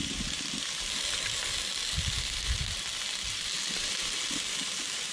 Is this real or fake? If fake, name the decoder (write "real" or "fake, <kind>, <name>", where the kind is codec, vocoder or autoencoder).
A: real